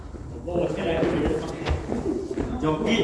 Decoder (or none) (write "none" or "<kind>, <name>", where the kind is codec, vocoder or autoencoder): none